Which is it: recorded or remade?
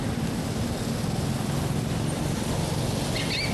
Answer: recorded